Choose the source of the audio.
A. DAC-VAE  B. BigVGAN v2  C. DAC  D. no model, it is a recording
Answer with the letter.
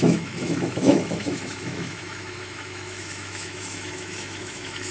A